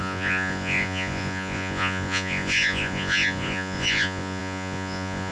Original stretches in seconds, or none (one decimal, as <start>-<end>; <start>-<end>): none